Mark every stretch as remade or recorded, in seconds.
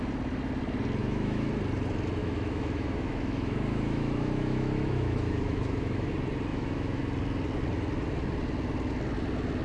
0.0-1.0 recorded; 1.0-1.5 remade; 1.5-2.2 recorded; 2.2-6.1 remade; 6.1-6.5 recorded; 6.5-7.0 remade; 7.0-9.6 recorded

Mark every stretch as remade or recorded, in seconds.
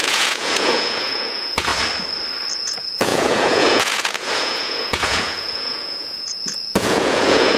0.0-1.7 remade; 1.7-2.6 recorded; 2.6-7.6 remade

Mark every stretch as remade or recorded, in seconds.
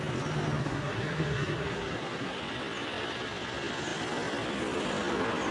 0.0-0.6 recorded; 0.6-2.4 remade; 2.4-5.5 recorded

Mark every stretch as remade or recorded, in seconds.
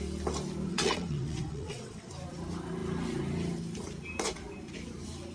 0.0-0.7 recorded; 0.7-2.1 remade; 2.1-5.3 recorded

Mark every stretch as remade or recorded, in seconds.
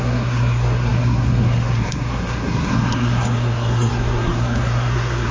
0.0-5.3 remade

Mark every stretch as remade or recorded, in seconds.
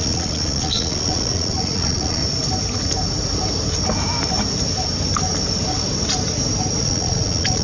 0.0-2.2 remade; 2.2-6.8 recorded; 6.8-7.6 remade